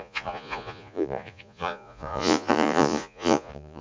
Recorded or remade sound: remade